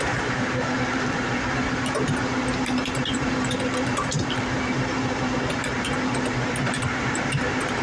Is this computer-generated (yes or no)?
yes